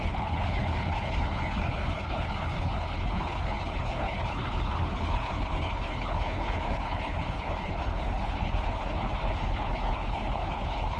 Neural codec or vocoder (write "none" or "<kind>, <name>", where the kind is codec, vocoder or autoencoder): codec, HILCodec